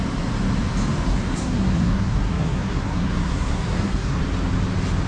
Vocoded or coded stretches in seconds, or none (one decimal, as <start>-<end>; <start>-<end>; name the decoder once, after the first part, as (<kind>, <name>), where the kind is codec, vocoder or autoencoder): 1.1-4.2 (codec, SNAC)